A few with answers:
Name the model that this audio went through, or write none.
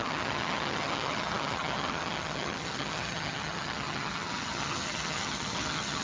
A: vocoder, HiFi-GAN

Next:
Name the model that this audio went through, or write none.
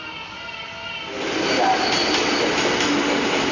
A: none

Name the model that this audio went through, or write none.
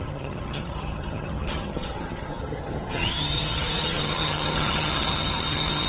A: vocoder, HiFi-GAN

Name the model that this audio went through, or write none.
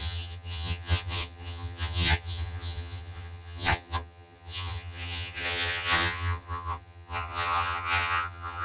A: vocoder, HiFi-GAN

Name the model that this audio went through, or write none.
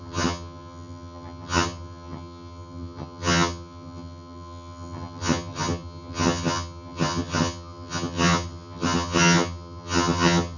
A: vocoder, HiFi-GAN